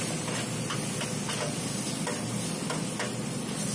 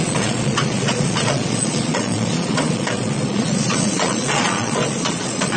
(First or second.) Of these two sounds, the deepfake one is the second